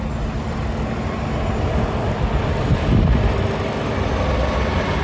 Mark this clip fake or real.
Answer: real